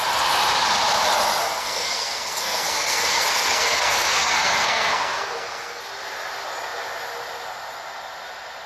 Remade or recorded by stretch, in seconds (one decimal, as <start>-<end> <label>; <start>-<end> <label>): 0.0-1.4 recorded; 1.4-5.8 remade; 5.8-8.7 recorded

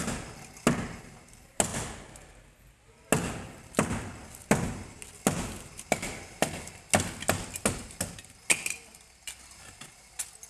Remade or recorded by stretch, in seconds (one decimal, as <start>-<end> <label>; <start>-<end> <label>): 0.0-10.5 recorded

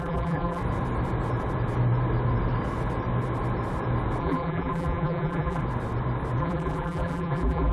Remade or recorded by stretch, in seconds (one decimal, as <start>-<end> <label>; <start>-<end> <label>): 0.0-0.6 remade; 0.6-4.2 recorded; 4.2-5.6 remade; 5.6-6.4 recorded; 6.4-7.7 remade

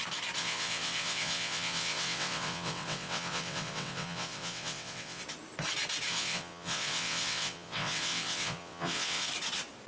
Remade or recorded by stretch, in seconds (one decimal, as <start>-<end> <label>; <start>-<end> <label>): 0.0-0.4 recorded; 0.4-5.2 remade; 5.2-6.1 recorded; 6.1-9.3 remade; 9.3-9.9 recorded

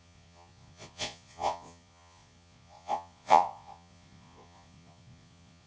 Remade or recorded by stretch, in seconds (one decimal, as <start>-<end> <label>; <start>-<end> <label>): 0.0-5.7 remade

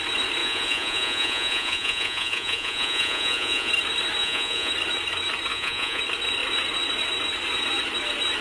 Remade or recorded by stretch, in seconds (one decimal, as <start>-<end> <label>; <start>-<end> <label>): 0.0-0.4 recorded; 0.4-3.7 remade; 3.7-4.2 recorded; 4.2-4.7 remade; 4.7-5.5 recorded; 5.5-6.0 remade; 6.0-8.4 recorded

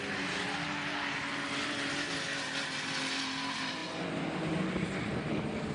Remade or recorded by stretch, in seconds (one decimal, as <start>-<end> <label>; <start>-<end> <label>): 0.0-5.7 recorded